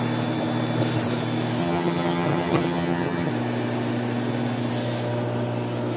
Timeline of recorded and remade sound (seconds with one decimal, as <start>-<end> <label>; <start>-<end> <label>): 0.0-1.6 recorded; 1.6-3.3 remade; 3.3-6.0 recorded